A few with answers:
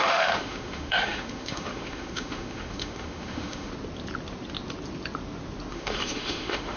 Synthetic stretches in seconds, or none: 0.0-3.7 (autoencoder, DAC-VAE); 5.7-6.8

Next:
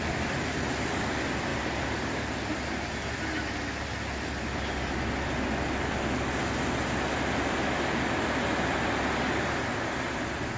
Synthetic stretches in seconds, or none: none